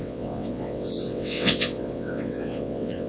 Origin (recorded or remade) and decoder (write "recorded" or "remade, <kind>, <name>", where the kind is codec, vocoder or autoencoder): remade, vocoder, WaveNeXt